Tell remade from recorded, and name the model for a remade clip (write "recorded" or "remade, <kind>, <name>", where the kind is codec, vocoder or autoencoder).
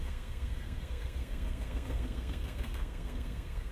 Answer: remade, codec, SNAC